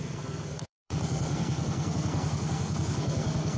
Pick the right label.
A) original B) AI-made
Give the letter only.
B